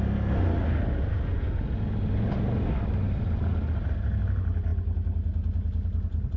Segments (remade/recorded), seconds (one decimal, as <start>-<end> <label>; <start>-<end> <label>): 0.0-6.4 recorded

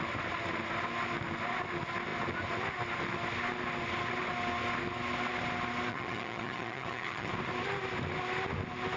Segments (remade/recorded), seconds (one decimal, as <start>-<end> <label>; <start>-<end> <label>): 0.0-5.9 recorded; 5.9-7.3 remade; 7.3-9.0 recorded

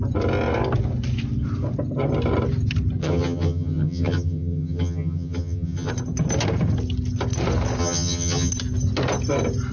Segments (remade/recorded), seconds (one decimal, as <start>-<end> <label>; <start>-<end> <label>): 0.0-3.0 recorded; 3.0-5.9 remade; 5.9-7.8 recorded; 7.8-8.5 remade; 8.5-9.7 recorded

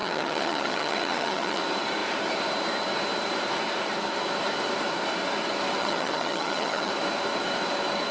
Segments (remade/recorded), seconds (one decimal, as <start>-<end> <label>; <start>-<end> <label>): 0.0-1.6 remade; 1.6-5.8 recorded; 5.8-6.9 remade; 6.9-8.1 recorded

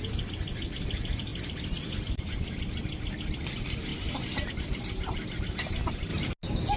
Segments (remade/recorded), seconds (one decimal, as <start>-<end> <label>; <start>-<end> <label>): 0.0-6.8 recorded